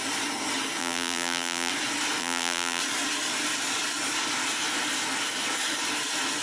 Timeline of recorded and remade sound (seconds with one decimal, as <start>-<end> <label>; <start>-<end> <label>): 0.0-0.8 recorded; 0.8-1.7 remade; 1.7-2.2 recorded; 2.2-2.8 remade; 2.8-6.4 recorded